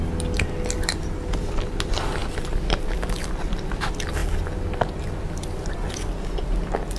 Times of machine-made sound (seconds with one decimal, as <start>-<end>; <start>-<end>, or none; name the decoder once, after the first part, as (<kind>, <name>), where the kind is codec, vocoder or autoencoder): 2.2-3.2 (vocoder, BigVGAN v2)